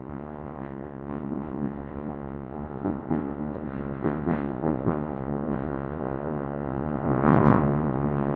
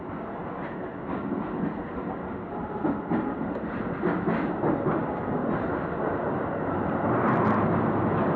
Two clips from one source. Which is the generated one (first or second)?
first